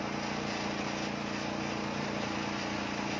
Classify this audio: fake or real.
real